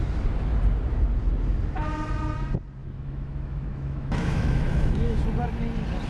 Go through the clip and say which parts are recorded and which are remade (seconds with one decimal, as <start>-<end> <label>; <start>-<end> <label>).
0.0-2.8 recorded; 2.8-5.2 remade; 5.2-6.1 recorded

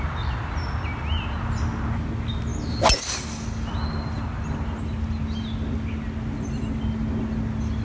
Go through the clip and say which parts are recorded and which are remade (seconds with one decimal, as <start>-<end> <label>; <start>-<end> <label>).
0.0-7.8 recorded

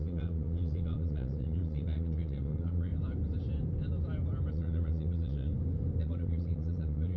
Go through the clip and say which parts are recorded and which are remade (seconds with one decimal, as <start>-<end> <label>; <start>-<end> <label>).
0.0-2.9 remade; 2.9-4.5 recorded; 4.5-5.5 remade; 5.5-6.0 recorded; 6.0-7.2 remade

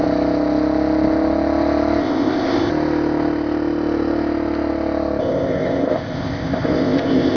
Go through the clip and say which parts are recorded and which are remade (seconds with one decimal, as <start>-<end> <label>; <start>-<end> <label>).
0.0-2.0 recorded; 2.0-2.7 remade; 2.7-5.2 recorded; 5.2-7.4 remade

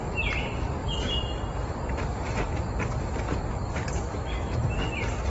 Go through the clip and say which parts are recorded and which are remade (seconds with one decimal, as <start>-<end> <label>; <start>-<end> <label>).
0.0-0.8 recorded; 0.8-2.0 remade; 2.0-5.3 recorded

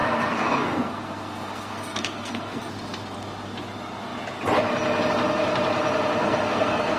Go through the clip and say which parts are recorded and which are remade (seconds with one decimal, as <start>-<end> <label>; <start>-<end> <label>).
0.0-2.6 remade; 2.6-6.2 recorded; 6.2-7.0 remade

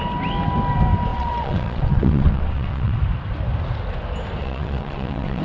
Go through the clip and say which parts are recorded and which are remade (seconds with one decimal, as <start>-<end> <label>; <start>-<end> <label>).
0.0-1.1 recorded; 1.1-3.0 remade; 3.0-4.4 recorded; 4.4-5.4 remade

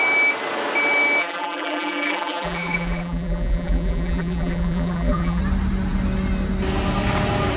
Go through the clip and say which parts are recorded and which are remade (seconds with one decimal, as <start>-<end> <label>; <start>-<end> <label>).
0.0-1.2 recorded; 1.2-5.4 remade; 5.4-7.6 recorded